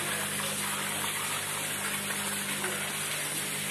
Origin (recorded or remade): recorded